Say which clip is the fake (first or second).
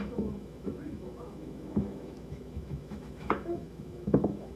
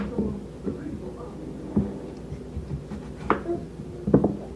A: first